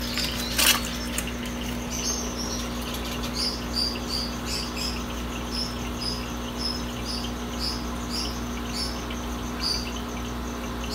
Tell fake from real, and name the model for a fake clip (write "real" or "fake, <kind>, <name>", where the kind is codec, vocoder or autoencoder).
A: real